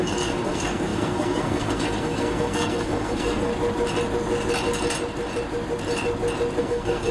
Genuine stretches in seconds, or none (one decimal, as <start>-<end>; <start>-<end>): 3.5-6.6